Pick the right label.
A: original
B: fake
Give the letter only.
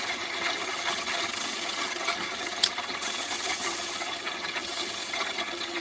B